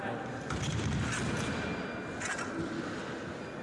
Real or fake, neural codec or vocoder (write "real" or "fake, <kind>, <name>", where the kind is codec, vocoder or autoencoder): real